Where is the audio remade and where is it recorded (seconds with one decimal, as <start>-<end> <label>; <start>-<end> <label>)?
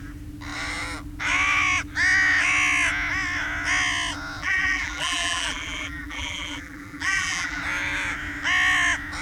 0.0-4.4 recorded; 4.4-7.6 remade; 7.6-9.2 recorded